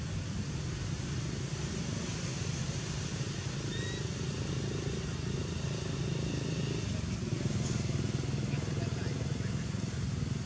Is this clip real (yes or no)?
yes